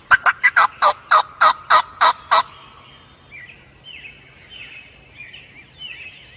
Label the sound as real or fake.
real